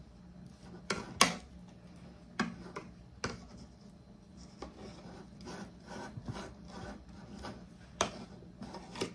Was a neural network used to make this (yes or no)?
no